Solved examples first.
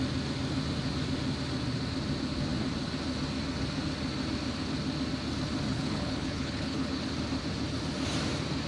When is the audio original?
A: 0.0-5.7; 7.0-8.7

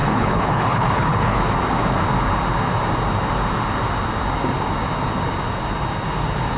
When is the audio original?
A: 1.4-6.6

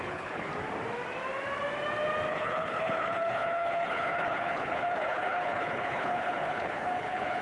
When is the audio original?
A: 0.5-2.3

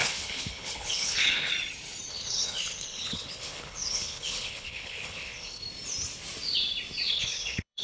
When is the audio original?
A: 1.5-2.1; 5.6-7.1

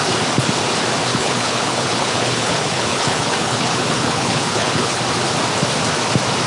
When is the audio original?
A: 0.0-1.1; 5.0-6.5

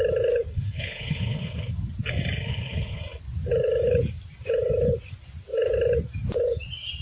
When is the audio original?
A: 0.0-0.5; 1.7-2.5; 3.0-7.0

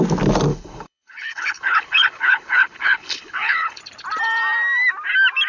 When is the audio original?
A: 0.0-0.5; 3.8-5.5

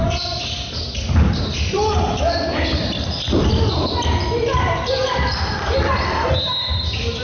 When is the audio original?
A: 0.0-7.2